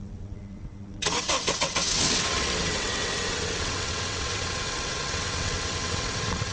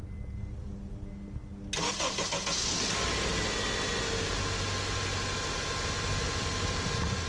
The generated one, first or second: first